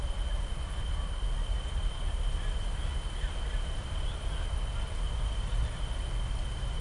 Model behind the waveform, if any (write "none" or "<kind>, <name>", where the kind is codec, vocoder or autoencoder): none